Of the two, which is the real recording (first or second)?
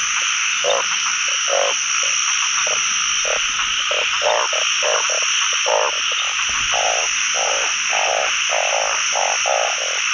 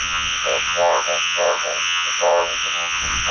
first